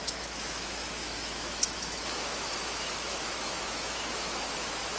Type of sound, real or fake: fake